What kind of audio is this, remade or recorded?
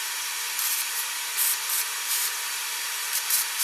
remade